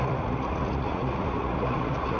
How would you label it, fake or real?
fake